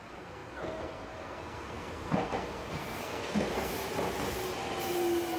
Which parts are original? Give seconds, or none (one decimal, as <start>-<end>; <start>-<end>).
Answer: 3.7-5.4